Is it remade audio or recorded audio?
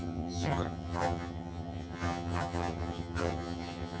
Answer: remade